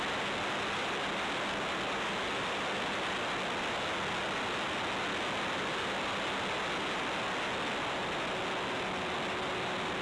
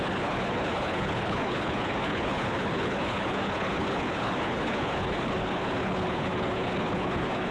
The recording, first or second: first